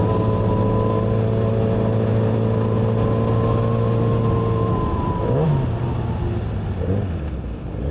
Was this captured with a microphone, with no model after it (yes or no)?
yes